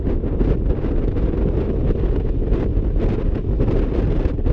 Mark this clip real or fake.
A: real